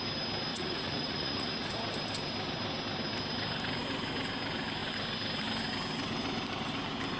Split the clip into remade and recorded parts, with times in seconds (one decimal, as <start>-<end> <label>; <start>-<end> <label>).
0.0-0.5 recorded; 0.5-1.8 remade; 1.8-7.2 recorded